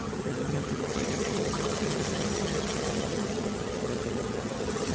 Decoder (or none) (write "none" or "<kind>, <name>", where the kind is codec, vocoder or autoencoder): vocoder, HiFi-GAN